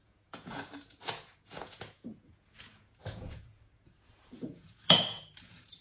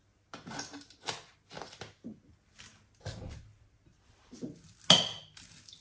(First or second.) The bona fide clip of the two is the second